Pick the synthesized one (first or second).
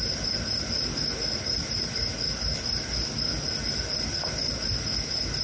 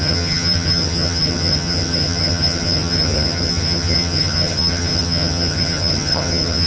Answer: second